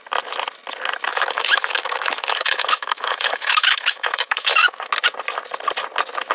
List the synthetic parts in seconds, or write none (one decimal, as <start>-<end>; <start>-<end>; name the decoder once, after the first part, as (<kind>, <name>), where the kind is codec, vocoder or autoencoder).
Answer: 1.1-4.9 (autoencoder, DAC-VAE)